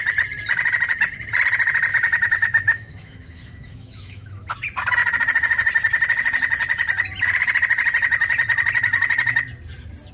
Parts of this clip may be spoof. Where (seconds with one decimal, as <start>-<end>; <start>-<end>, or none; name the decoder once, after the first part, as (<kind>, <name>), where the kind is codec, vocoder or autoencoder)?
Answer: 1.9-4.5 (autoencoder, DAC-VAE)